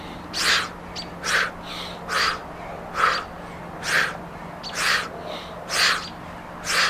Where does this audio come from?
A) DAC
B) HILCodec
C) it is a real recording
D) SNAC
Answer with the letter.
C